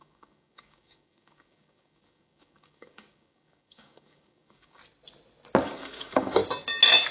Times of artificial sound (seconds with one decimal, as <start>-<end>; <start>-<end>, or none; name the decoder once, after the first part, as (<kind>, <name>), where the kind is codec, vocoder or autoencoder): 0.0-4.8 (codec, DAC); 5.6-6.4